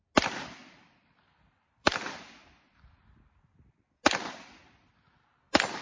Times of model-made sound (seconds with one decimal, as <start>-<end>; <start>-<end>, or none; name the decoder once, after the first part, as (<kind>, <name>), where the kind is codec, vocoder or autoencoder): 0.6-4.0 (vocoder, BigVGAN v2)